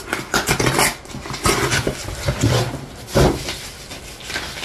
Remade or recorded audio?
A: recorded